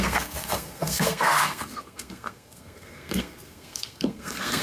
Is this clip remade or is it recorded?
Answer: remade